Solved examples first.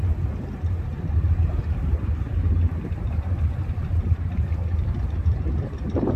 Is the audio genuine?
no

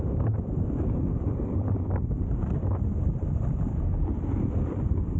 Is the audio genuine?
yes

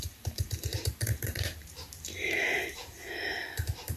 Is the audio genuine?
no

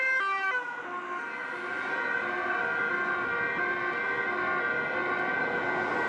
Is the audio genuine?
yes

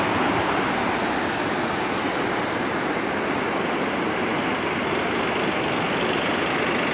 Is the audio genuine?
yes